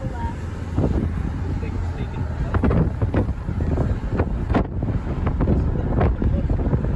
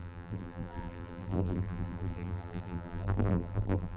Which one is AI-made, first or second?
second